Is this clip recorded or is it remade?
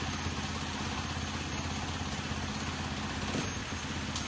recorded